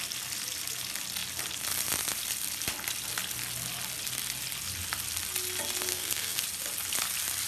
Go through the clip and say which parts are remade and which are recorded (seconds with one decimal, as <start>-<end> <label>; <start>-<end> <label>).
0.0-5.9 recorded; 5.9-6.4 remade; 6.4-7.5 recorded